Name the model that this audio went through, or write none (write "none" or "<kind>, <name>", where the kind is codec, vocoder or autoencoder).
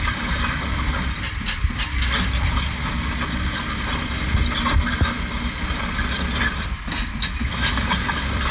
none